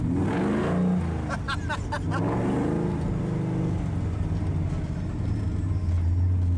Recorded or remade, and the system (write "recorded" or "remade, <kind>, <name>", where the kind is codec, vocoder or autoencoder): recorded